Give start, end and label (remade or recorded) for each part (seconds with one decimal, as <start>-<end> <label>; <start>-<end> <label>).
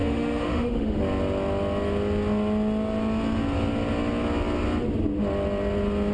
0.0-1.0 remade; 1.0-6.1 recorded